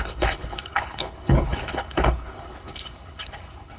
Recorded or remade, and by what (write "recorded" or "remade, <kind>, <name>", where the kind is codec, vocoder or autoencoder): remade, codec, HILCodec